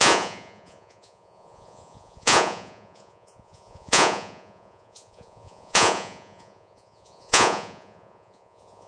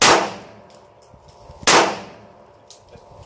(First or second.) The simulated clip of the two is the first